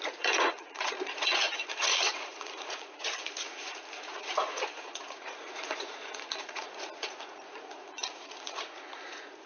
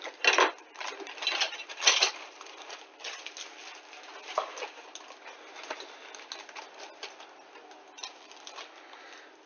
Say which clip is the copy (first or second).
first